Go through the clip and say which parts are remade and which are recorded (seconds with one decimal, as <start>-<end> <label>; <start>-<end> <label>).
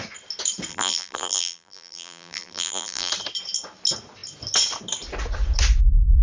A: 0.0-0.7 recorded; 0.7-3.1 remade; 3.1-6.2 recorded